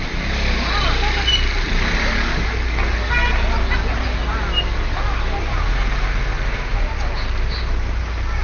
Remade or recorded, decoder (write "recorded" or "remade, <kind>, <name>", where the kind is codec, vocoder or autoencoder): recorded